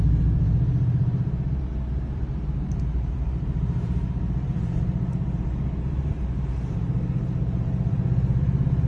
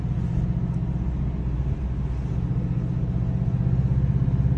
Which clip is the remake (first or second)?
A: first